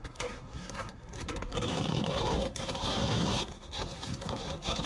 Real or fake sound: fake